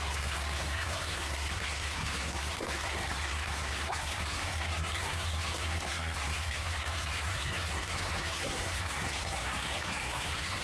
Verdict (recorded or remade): remade